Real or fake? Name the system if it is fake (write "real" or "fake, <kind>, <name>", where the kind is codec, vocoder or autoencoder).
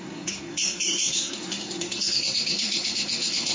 fake, codec, SNAC